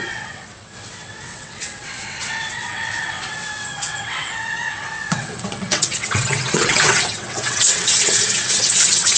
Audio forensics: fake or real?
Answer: fake